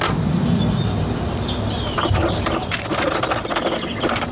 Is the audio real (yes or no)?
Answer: yes